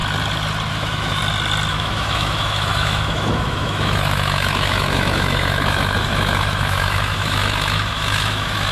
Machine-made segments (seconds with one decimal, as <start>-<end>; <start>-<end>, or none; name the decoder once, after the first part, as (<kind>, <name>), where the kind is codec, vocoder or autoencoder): 0.7-1.2 (autoencoder, DAC-VAE); 1.7-8.7